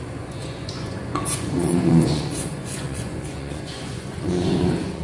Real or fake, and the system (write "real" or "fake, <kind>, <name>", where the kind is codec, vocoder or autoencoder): fake, vocoder, Vocos